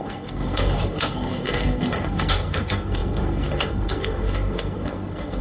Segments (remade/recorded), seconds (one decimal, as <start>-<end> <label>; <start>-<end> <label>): 0.0-5.4 remade